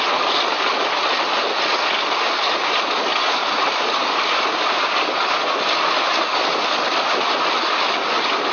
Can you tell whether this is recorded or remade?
recorded